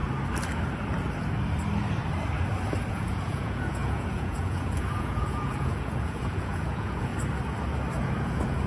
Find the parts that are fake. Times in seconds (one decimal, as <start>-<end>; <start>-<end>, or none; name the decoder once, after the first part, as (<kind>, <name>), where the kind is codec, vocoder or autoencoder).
2.9-7.1 (vocoder, Vocos); 8.0-8.7